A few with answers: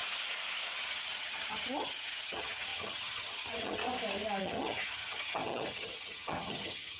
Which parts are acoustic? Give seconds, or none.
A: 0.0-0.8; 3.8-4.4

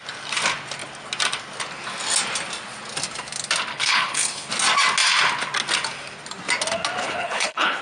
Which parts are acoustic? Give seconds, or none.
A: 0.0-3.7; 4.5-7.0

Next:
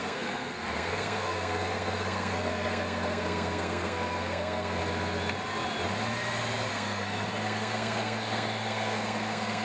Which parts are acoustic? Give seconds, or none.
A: 4.8-6.7